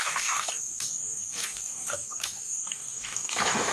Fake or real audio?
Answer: fake